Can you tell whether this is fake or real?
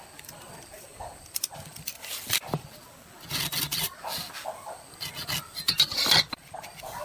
real